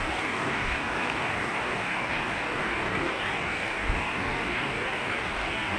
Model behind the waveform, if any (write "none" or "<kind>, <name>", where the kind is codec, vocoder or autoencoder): codec, DAC